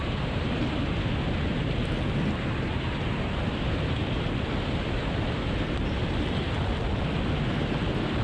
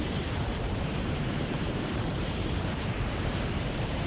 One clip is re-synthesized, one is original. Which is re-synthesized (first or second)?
second